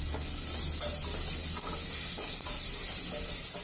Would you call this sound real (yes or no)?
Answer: yes